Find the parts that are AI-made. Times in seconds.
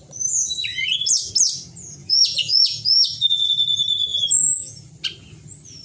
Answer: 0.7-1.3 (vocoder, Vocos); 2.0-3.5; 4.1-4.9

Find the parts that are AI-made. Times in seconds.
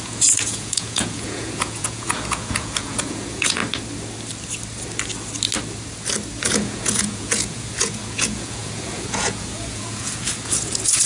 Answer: 0.0-3.6 (vocoder, Vocos); 6.4-11.1